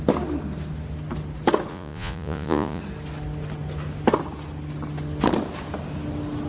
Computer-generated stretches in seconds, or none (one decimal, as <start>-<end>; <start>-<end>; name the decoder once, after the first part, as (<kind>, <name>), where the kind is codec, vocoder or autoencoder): 1.7-2.8 (vocoder, Vocos)